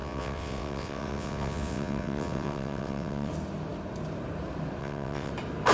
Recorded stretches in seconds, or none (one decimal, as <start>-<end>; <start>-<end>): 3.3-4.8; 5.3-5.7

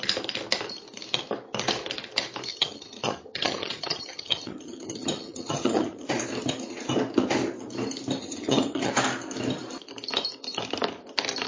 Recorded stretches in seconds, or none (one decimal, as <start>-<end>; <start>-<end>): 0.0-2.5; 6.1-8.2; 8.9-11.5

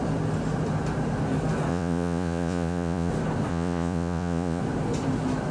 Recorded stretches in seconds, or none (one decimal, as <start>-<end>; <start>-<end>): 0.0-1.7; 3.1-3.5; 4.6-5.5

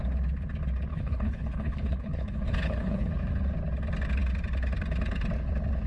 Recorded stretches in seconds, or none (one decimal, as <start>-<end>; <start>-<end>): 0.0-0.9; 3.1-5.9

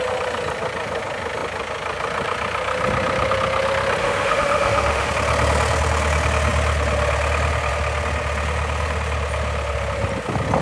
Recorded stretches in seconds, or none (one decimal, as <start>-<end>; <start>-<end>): 0.0-4.0; 5.1-10.6

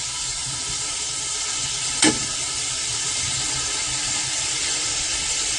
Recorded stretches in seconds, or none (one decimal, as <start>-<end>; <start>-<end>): 0.0-0.4; 3.8-4.2

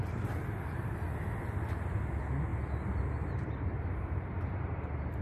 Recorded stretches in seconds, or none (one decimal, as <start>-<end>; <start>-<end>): 0.0-5.2